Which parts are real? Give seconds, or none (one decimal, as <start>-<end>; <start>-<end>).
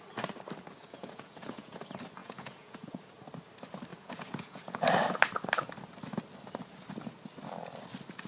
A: 0.0-0.8; 1.8-2.2; 3.1-3.9; 4.8-8.3